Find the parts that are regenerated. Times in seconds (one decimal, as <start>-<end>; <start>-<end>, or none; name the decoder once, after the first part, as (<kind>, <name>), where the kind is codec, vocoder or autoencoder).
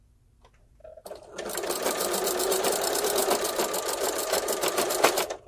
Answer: 0.8-2.7 (vocoder, BigVGAN v2)